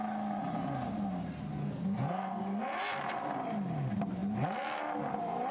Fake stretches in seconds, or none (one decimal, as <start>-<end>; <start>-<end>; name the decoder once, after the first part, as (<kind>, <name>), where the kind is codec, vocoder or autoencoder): 1.6-2.6 (codec, SNAC)